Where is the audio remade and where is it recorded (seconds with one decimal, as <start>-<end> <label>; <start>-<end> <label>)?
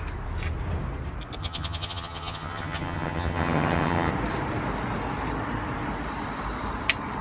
0.0-1.4 recorded; 1.4-4.1 remade; 4.1-7.2 recorded